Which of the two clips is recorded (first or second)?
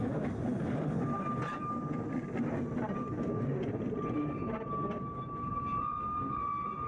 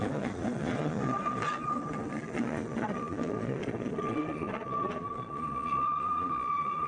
first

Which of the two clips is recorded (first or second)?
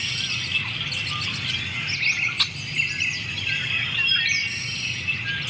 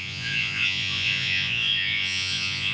first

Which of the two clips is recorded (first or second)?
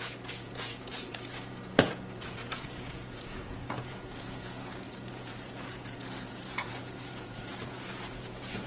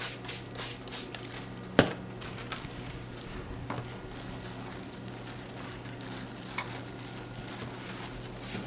second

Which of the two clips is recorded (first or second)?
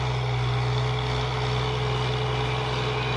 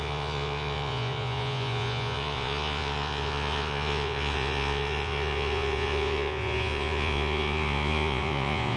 first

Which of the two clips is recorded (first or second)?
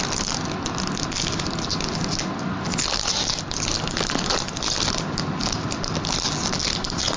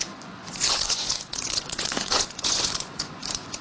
first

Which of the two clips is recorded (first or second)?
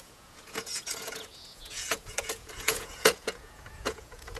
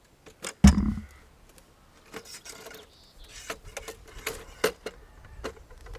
second